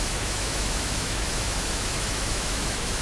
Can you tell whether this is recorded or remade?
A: remade